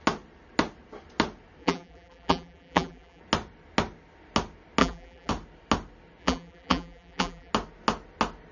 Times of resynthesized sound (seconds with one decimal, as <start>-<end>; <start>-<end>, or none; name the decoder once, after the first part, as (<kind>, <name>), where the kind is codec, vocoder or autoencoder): 1.6-3.2 (vocoder, BigVGAN v2); 4.8-5.3; 6.2-7.5